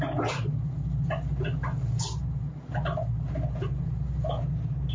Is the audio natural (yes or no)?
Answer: yes